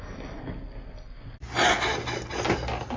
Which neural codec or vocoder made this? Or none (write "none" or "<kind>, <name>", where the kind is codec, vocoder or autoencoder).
none